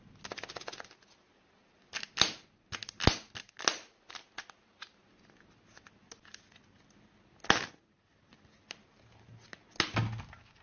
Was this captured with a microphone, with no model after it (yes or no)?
yes